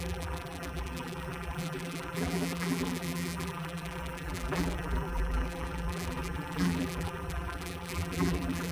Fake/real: fake